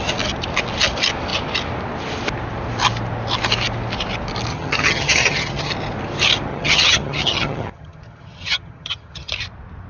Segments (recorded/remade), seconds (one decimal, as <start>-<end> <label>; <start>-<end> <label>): 0.0-4.5 recorded; 4.5-5.7 remade; 5.7-6.5 recorded; 6.5-9.3 remade; 9.3-9.9 recorded